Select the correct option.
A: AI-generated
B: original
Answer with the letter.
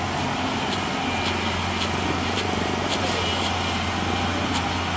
B